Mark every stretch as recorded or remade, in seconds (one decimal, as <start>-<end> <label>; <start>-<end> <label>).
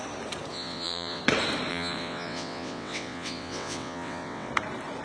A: 0.0-0.5 recorded; 0.5-1.2 remade; 1.2-1.7 recorded; 1.7-4.5 remade; 4.5-5.0 recorded